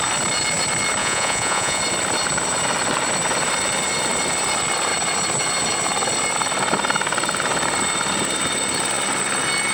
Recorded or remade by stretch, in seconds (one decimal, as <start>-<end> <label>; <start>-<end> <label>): 0.0-1.0 recorded; 1.0-1.8 remade; 1.8-9.7 recorded